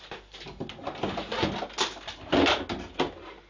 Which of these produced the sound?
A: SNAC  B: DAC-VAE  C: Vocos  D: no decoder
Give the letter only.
D